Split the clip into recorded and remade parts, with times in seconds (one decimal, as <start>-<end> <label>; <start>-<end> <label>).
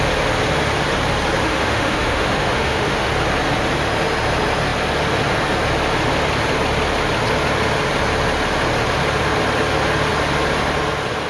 0.0-1.4 recorded; 1.4-3.1 remade; 3.1-11.3 recorded